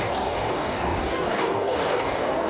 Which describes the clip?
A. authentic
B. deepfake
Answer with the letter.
B